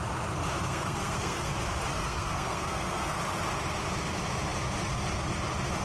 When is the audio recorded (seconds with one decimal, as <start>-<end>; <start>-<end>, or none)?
0.0-0.7; 1.5-1.9; 3.2-5.8